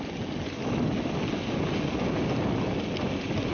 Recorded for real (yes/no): yes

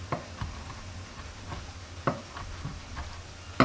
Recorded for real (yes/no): yes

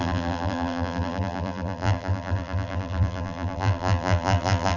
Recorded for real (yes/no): no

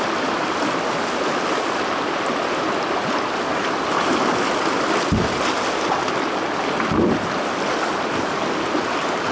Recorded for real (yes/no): yes